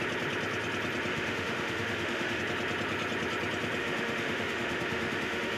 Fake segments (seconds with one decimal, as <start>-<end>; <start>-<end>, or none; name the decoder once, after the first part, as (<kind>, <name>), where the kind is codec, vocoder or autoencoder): 1.1-2.4 (autoencoder, DAC-VAE); 3.8-5.6